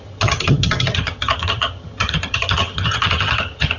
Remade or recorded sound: remade